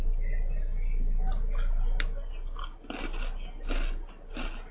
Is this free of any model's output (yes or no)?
yes